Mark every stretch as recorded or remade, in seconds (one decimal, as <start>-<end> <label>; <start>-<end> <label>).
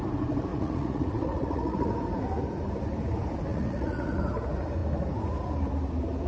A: 0.0-0.5 recorded; 0.5-1.9 remade; 1.9-3.5 recorded; 3.5-4.2 remade; 4.2-6.3 recorded